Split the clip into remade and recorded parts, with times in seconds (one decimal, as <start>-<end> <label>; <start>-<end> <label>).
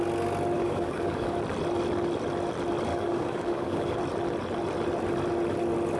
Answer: 0.0-0.6 recorded; 0.6-1.4 remade; 1.4-2.9 recorded; 2.9-4.0 remade; 4.0-6.0 recorded